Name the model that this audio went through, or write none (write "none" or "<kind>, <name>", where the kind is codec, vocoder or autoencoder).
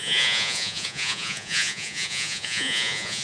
vocoder, Vocos